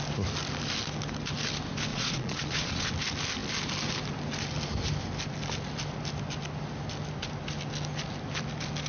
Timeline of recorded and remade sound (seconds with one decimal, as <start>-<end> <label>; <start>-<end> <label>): 0.0-1.9 recorded; 1.9-2.9 remade; 2.9-8.9 recorded